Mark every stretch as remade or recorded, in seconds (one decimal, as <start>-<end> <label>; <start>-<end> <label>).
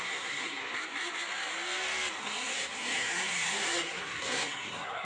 0.0-0.7 remade; 0.7-2.2 recorded; 2.2-5.0 remade